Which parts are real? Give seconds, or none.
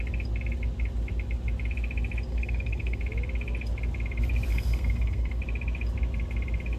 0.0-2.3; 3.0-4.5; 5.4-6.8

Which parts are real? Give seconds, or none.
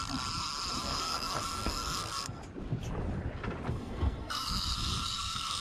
0.0-0.8; 2.4-3.7